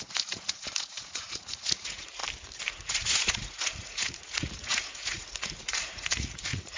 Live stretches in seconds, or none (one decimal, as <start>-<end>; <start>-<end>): 2.2-2.7